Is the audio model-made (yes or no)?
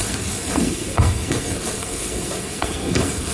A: yes